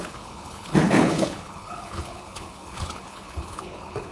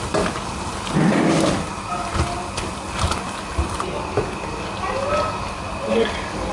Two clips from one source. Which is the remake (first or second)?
first